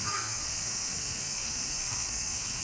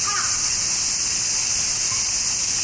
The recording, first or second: second